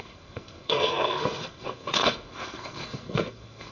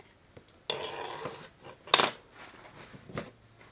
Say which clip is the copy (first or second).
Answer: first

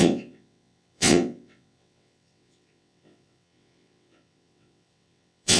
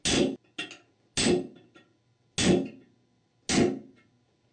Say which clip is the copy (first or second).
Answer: first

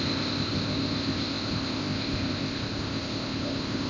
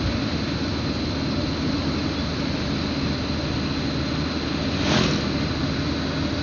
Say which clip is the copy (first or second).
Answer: first